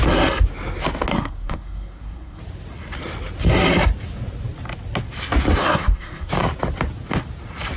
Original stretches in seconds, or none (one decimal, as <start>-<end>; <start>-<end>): 0.0-1.1; 2.4-5.6; 6.3-7.8